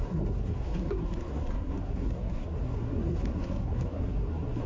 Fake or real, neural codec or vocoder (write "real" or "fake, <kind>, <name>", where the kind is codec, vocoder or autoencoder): fake, codec, SNAC